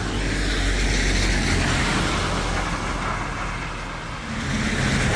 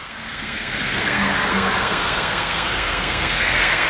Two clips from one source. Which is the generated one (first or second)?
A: second